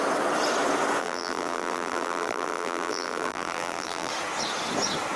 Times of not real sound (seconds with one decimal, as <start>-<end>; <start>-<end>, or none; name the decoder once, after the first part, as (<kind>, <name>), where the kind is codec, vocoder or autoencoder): 1.0-4.1 (vocoder, BigVGAN v2)

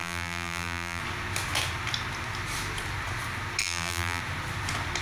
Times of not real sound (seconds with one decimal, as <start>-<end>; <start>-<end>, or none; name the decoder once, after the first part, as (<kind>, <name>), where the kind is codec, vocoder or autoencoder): 0.0-1.0 (vocoder, BigVGAN v2); 3.6-4.2

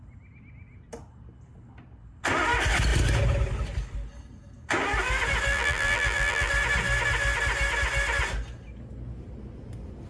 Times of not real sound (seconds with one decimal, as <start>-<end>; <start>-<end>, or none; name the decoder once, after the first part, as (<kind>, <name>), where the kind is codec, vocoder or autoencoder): 5.5-6.5 (vocoder, BigVGAN v2)

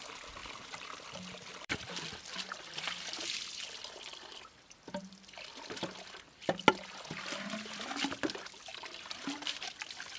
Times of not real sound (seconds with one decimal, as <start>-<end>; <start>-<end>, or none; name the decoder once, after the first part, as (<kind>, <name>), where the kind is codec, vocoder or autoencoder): 0.4-4.9 (vocoder, BigVGAN v2); 8.7-9.7

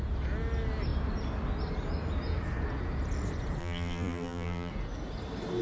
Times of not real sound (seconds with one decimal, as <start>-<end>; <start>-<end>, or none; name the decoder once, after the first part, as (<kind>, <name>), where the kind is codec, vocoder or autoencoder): 3.6-4.7 (vocoder, BigVGAN v2)